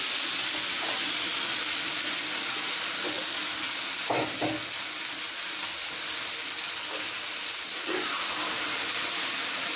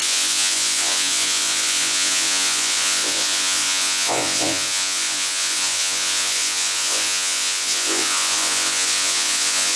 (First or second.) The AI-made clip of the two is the second